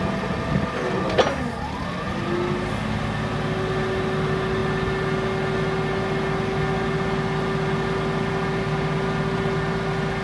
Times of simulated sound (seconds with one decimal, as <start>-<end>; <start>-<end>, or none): none